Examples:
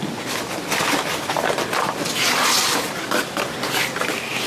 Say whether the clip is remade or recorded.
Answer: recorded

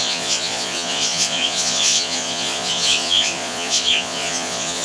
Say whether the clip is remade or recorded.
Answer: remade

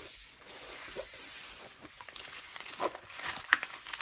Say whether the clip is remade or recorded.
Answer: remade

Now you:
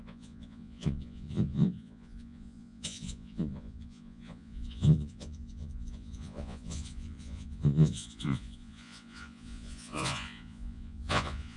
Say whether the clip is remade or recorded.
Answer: remade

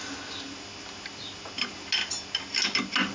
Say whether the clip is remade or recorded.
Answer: recorded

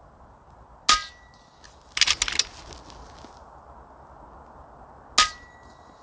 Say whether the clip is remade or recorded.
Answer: recorded